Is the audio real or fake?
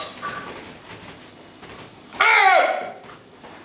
real